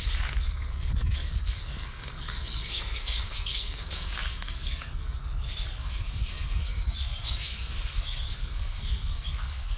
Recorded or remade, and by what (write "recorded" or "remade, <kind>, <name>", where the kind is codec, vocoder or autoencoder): remade, codec, SNAC